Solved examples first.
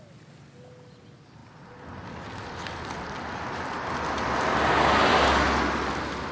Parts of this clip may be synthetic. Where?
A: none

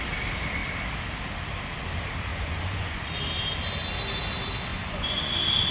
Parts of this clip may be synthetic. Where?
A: 2.3-3.1; 4.7-5.3

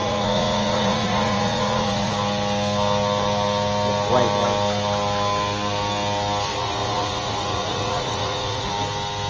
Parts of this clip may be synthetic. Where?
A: 0.0-2.1; 6.5-8.7